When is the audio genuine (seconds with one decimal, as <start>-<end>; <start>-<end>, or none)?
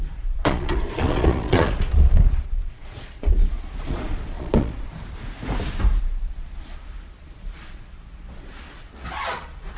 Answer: 4.9-6.0